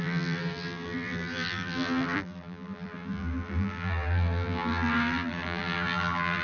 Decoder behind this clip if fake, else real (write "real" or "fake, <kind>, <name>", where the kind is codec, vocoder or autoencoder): fake, vocoder, BigVGAN v2